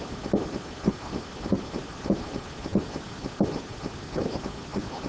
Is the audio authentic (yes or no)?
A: yes